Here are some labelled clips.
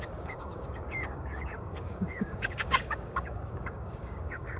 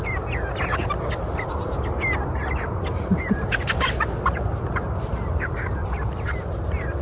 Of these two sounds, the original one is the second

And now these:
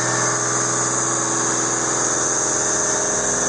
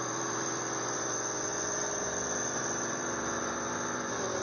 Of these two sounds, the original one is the first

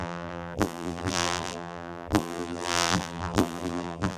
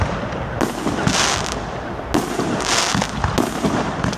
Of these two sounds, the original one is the second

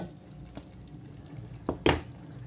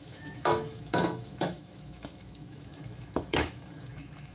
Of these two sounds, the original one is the first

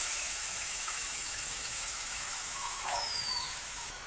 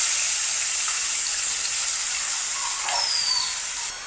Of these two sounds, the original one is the second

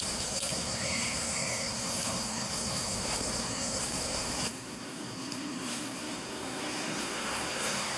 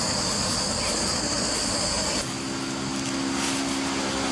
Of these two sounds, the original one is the second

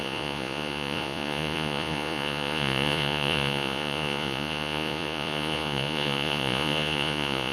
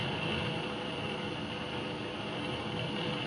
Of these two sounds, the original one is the second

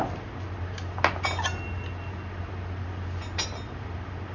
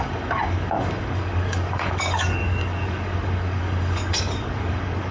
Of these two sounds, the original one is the first